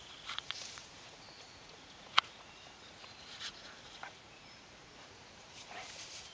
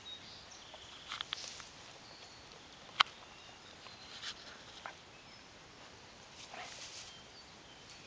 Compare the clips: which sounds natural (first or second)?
second